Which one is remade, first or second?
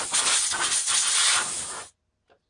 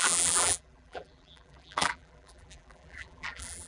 second